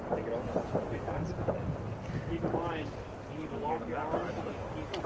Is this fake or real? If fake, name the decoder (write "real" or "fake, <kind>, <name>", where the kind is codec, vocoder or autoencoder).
real